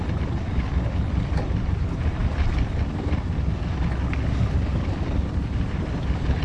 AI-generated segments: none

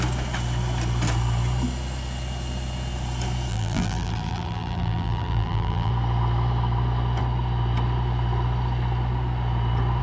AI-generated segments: 3.5-5.9 (vocoder, BigVGAN v2)

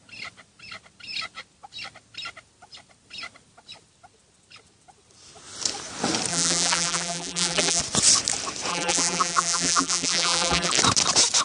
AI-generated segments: 6.3-7.8 (vocoder, BigVGAN v2); 8.7-10.7

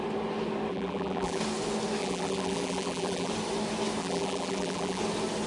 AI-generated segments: 0.7-1.4 (vocoder, BigVGAN v2); 2.0-3.3; 4.0-5.0

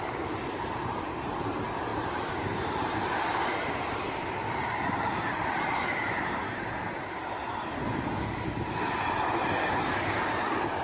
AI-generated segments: 0.0-6.4 (vocoder, BigVGAN v2)

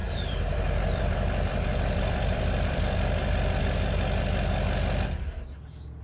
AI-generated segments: 0.0-3.6 (vocoder, BigVGAN v2)

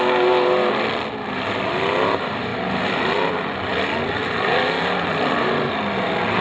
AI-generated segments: 2.5-3.3 (vocoder, BigVGAN v2); 3.7-5.7

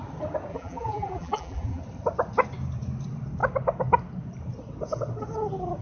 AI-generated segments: 0.5-1.8 (vocoder, BigVGAN v2)